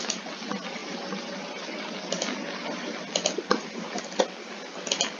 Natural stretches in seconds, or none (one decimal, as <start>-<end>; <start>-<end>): 0.0-5.2